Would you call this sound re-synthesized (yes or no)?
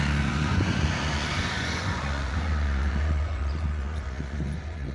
yes